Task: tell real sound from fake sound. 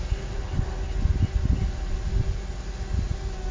real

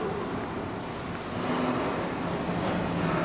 real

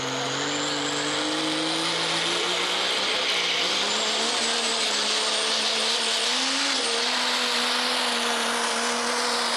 real